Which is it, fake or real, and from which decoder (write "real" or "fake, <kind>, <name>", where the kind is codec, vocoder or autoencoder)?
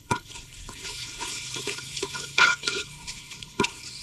fake, codec, HILCodec